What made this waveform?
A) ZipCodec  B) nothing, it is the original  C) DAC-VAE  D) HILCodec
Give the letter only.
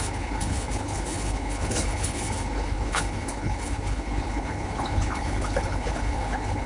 D